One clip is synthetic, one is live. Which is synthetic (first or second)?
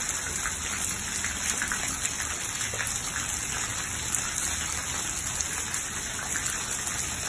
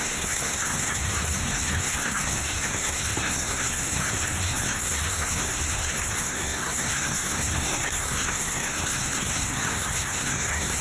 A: second